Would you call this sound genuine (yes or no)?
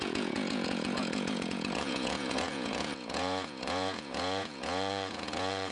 no